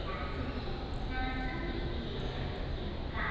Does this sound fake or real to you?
real